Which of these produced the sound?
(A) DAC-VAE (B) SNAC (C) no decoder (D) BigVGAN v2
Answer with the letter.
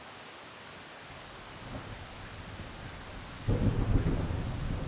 C